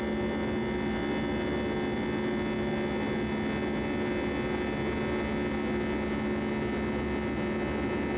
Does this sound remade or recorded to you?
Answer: recorded